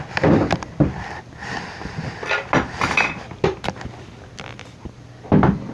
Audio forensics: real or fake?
real